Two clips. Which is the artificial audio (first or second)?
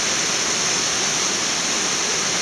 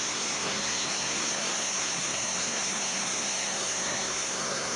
second